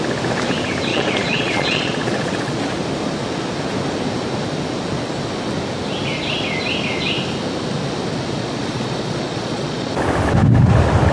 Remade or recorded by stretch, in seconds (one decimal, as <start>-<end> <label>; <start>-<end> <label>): 0.0-0.9 recorded; 0.9-2.6 remade; 2.6-8.4 recorded; 8.4-9.9 remade; 9.9-11.1 recorded